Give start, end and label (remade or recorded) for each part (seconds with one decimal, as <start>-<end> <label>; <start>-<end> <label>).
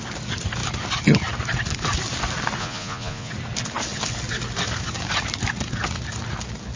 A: 0.0-2.6 recorded; 2.6-3.3 remade; 3.3-6.8 recorded